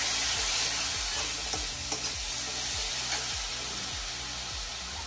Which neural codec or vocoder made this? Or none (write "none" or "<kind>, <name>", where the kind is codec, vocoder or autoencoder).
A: none